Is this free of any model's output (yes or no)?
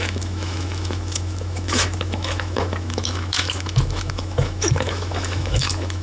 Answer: no